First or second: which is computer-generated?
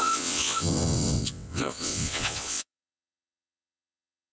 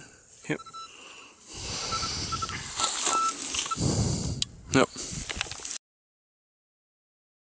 first